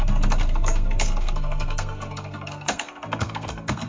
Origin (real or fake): fake